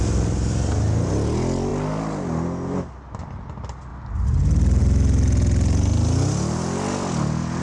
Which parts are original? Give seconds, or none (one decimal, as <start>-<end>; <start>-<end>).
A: 0.0-7.6

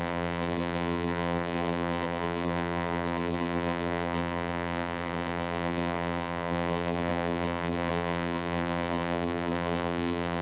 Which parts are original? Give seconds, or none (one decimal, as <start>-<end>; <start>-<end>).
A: none

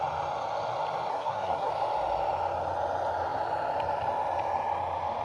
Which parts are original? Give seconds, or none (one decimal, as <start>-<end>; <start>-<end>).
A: 0.0-1.1; 1.7-5.2

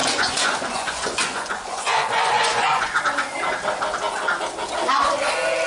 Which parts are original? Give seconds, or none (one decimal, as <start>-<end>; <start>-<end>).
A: 3.0-5.7

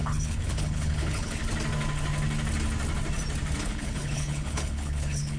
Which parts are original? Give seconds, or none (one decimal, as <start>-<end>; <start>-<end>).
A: 1.4-3.6

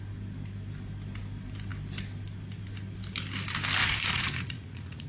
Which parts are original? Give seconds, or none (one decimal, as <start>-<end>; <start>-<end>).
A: 0.0-3.8

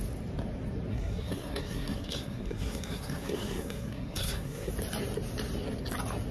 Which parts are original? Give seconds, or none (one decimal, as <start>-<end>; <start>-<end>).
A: 0.0-0.9; 4.7-6.3

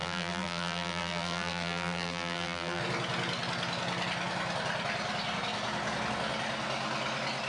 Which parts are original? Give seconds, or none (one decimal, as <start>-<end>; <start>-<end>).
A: 2.8-7.5